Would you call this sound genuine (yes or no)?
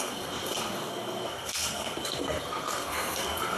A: no